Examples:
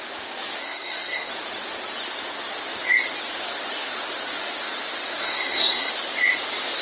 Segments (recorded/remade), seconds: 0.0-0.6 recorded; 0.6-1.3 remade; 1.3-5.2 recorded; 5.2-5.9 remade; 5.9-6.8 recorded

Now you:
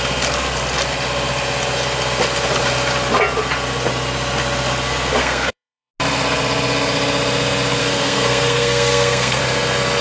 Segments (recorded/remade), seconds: 0.0-5.2 recorded; 5.2-5.9 remade; 5.9-7.8 recorded; 7.8-9.4 remade; 9.4-10.0 recorded